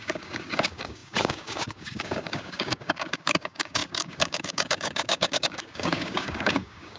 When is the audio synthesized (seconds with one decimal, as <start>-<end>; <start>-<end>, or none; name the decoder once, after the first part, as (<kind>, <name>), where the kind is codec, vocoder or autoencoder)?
0.0-7.0 (codec, DAC)